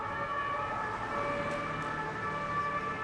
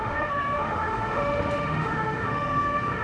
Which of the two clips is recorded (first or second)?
first